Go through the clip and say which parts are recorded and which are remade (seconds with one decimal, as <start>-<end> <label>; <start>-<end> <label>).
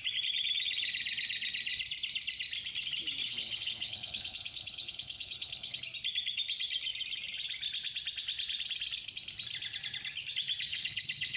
0.0-3.2 recorded; 3.2-5.8 remade; 5.8-10.7 recorded; 10.7-11.4 remade